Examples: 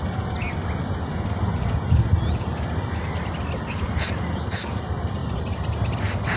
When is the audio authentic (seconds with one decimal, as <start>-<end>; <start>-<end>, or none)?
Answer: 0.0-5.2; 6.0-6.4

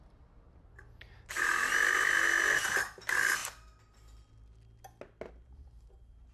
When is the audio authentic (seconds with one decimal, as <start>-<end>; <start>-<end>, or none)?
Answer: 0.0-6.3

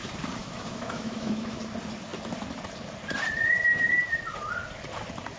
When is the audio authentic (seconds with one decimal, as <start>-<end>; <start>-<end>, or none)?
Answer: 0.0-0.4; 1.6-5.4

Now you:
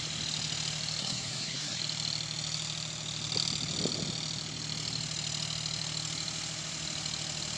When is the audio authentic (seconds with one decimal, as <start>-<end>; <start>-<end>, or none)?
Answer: 0.0-1.0; 1.8-7.6

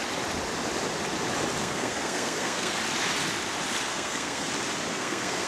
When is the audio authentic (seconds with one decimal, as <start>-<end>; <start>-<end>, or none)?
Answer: 0.0-1.6; 2.8-3.9; 4.5-4.9

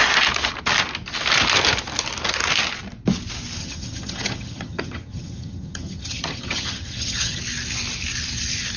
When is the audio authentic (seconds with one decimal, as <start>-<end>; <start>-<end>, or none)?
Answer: 0.0-3.6; 7.4-8.8